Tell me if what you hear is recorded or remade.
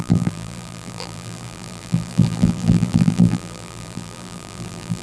remade